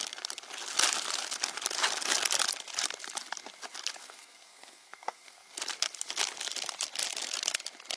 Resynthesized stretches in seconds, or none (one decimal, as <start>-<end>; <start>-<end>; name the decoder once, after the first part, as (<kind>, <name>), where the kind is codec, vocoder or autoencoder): 4.0-5.5 (codec, SNAC)